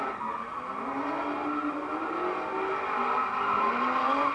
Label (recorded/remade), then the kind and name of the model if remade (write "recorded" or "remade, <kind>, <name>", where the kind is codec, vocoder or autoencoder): recorded